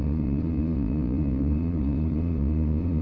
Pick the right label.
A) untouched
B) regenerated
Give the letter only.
B